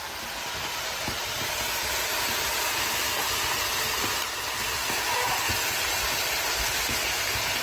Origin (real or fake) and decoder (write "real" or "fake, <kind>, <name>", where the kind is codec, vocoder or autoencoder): real